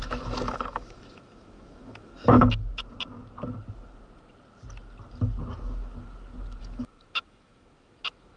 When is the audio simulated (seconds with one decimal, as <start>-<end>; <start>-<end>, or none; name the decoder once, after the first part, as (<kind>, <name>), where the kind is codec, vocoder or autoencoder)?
0.0-2.6 (autoencoder, DAC-VAE); 6.6-8.4